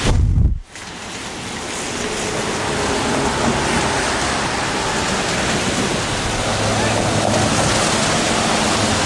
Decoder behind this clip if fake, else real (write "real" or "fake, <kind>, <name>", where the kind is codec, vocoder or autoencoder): real